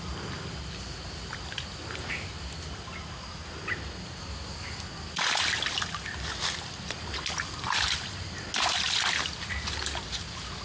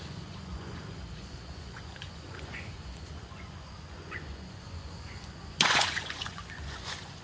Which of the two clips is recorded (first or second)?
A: first